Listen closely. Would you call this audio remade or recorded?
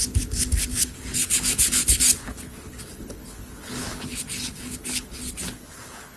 remade